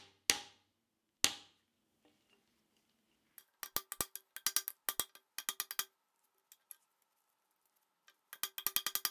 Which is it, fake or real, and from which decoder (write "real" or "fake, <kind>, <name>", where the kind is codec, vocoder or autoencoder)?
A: real